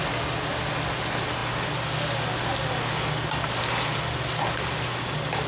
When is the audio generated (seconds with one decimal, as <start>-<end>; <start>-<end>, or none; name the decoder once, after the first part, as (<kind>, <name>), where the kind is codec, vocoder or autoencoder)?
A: none